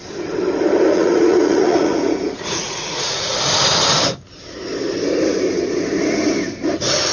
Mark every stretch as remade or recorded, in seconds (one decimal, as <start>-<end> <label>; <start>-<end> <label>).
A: 0.0-0.9 recorded; 0.9-3.4 remade; 3.4-7.1 recorded